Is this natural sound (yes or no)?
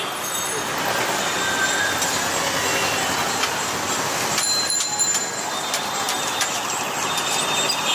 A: yes